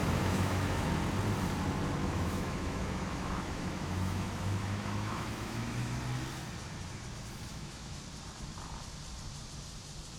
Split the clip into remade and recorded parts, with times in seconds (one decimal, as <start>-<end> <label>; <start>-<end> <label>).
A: 0.0-0.9 remade; 0.9-2.0 recorded; 2.0-6.0 remade; 6.0-7.5 recorded; 7.5-8.0 remade; 8.0-10.2 recorded